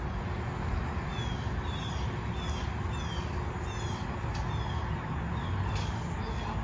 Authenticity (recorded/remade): recorded